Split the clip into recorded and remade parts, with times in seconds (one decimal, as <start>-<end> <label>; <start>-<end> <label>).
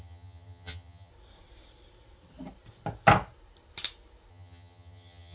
0.0-1.1 remade; 1.1-4.3 recorded; 4.3-5.3 remade